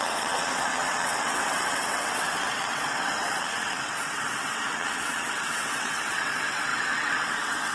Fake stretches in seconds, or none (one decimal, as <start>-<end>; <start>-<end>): 0.0-7.7